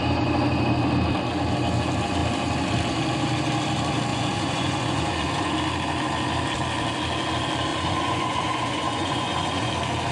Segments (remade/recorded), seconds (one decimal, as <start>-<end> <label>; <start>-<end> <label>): 0.0-4.1 recorded; 4.1-5.5 remade; 5.5-7.7 recorded; 7.7-9.7 remade; 9.7-10.1 recorded